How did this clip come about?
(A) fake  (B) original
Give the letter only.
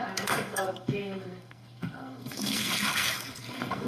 A